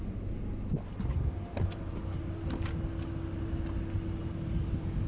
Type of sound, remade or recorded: recorded